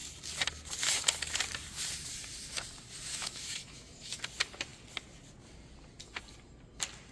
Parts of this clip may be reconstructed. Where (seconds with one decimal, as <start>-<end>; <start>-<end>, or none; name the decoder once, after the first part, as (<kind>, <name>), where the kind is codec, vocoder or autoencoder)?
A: 3.1-4.2 (autoencoder, DAC-VAE)

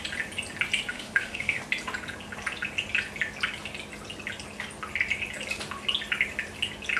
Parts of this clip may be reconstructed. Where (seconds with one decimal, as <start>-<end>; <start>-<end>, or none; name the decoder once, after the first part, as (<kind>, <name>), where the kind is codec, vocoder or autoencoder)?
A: 0.9-1.6 (autoencoder, DAC-VAE)

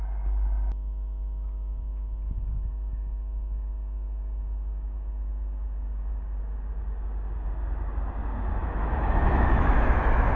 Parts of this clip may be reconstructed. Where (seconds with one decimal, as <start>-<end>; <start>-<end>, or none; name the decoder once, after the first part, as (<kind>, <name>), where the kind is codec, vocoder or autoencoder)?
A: 8.6-10.4 (autoencoder, DAC-VAE)

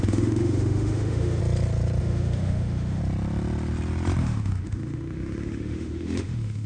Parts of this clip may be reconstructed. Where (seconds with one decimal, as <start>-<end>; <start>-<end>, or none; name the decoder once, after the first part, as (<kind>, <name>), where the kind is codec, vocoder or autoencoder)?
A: 0.0-1.4 (autoencoder, DAC-VAE); 2.0-3.0; 4.2-6.7

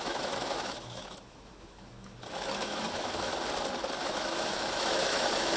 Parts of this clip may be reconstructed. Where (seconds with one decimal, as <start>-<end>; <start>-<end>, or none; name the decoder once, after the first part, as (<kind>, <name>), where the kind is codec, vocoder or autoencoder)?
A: 0.0-3.3 (autoencoder, DAC-VAE); 4.0-5.6

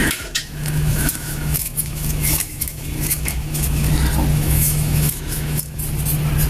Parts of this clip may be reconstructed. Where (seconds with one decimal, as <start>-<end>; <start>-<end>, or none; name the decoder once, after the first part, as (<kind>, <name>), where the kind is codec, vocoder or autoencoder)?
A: 0.0-3.9 (autoencoder, DAC-VAE); 4.3-5.8

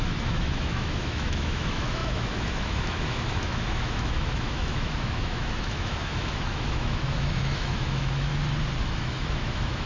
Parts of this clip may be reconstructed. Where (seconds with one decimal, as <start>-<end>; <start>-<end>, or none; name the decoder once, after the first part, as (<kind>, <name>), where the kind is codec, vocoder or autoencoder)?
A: 0.0-8.3 (autoencoder, DAC-VAE); 8.8-9.9

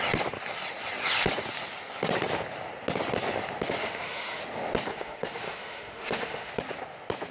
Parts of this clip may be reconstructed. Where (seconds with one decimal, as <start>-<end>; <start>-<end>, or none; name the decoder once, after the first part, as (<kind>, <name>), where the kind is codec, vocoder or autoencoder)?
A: 3.8-4.4 (autoencoder, DAC-VAE); 4.9-6.5